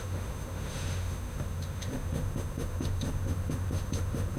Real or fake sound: fake